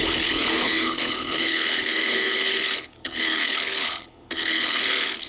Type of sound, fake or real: fake